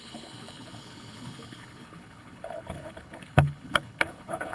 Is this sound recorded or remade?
remade